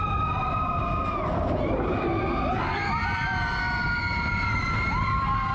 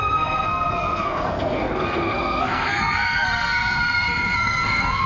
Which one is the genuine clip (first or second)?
first